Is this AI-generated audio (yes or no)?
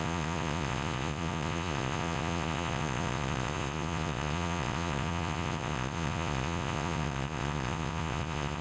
yes